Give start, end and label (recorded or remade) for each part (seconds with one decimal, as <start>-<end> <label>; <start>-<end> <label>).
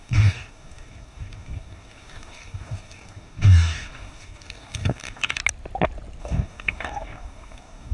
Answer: 0.0-5.4 remade; 5.4-6.2 recorded; 6.2-7.9 remade